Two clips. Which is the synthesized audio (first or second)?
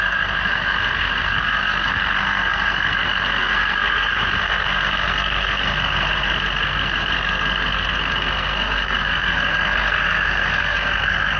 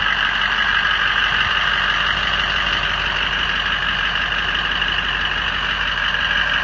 first